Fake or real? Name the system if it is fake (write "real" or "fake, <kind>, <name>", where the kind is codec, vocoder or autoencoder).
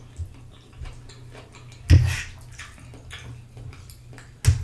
real